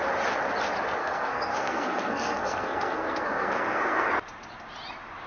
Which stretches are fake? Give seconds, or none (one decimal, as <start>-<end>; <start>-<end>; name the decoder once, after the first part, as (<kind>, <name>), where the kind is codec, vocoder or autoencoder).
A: 1.0-4.1 (codec, SNAC)